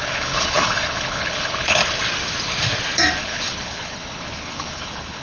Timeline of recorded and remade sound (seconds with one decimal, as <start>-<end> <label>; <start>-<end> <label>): 0.0-1.8 remade; 1.8-3.2 recorded; 3.2-5.2 remade

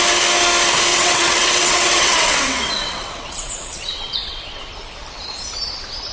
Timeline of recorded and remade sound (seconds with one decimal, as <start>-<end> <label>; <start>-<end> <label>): 0.0-0.9 recorded; 0.9-4.6 remade; 4.6-6.1 recorded

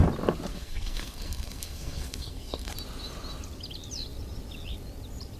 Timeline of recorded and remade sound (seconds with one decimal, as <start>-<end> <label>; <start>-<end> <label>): 0.0-0.5 recorded; 0.5-2.7 remade; 2.7-5.4 recorded

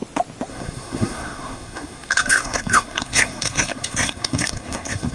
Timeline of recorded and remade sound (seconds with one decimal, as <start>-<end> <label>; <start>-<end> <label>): 0.0-0.5 recorded; 0.5-5.1 remade

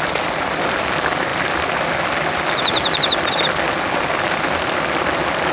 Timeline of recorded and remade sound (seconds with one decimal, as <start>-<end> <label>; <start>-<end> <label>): 0.0-5.5 recorded

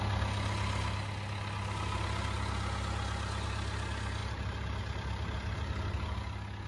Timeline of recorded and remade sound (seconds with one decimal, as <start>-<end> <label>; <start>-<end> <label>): 0.0-4.2 recorded; 4.2-4.8 remade; 4.8-6.7 recorded

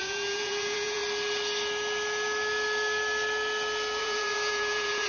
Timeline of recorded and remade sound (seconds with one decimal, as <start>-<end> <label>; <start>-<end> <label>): 0.0-1.0 remade; 1.0-4.0 recorded; 4.0-5.1 remade

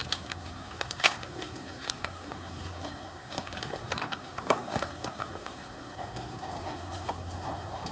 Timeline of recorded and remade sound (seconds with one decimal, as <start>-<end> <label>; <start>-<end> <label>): 0.0-7.9 remade